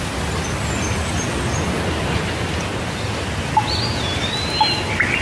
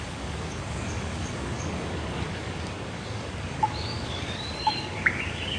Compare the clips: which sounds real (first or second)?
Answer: first